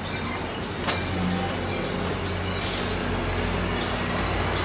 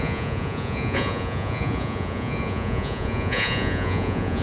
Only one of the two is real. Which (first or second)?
first